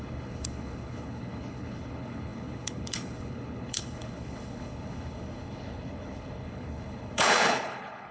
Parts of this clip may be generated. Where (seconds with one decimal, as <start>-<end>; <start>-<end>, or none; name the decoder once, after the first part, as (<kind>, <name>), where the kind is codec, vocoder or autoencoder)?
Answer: 0.0-8.1 (codec, HILCodec)

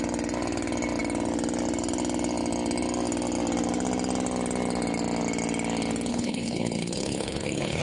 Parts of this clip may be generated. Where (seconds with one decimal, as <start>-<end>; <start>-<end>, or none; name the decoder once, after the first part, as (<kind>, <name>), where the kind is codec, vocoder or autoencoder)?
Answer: 6.1-7.8 (codec, HILCodec)

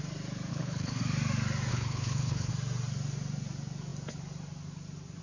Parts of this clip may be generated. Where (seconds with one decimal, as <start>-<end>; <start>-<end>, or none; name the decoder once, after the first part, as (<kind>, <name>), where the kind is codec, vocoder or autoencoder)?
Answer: 0.5-1.0 (codec, HILCodec); 1.7-2.5

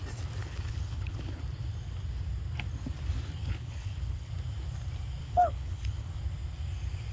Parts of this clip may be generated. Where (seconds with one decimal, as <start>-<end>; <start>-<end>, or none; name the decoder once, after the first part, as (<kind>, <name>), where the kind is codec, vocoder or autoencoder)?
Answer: 0.4-1.4 (codec, HILCodec); 3.4-4.3; 5.2-6.1

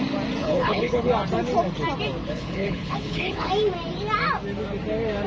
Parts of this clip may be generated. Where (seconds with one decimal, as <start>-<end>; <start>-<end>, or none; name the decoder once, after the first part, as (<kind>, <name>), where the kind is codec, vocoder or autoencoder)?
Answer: 0.4-1.1 (codec, HILCodec); 2.2-3.5

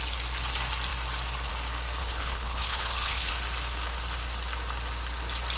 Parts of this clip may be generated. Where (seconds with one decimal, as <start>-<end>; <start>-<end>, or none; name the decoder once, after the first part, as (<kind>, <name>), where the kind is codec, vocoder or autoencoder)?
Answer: 2.0-3.3 (codec, HILCodec)

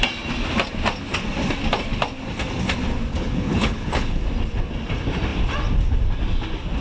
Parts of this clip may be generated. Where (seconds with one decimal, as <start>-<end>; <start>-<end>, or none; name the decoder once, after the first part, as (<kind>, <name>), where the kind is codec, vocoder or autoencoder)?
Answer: 3.1-4.2 (codec, HILCodec)

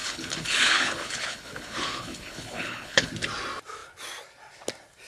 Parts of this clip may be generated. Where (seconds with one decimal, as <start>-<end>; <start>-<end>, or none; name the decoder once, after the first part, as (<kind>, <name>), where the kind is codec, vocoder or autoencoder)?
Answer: 0.0-3.1 (codec, HILCodec)